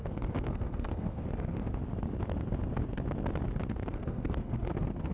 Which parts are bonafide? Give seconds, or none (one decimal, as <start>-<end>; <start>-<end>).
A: 1.8-3.7